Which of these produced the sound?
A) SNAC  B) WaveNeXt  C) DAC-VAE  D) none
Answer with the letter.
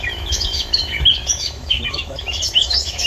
C